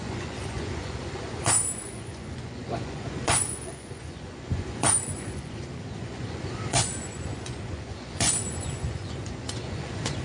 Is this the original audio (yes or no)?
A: no